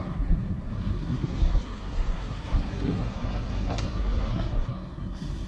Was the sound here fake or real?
fake